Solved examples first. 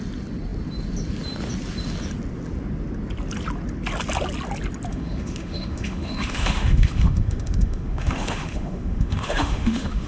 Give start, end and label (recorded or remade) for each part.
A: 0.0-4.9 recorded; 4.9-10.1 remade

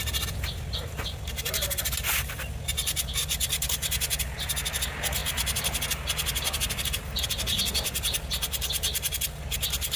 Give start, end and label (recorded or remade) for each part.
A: 0.0-10.0 recorded

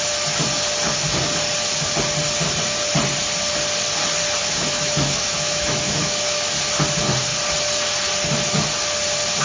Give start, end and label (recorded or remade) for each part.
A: 0.0-4.4 recorded; 4.4-6.6 remade; 6.6-9.4 recorded

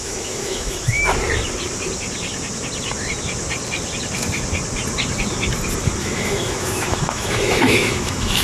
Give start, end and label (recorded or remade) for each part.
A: 0.0-1.0 remade; 1.0-6.0 recorded; 6.0-8.4 remade

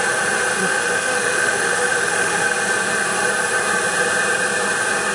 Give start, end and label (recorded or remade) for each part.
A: 0.0-0.6 recorded; 0.6-2.4 remade; 2.4-5.1 recorded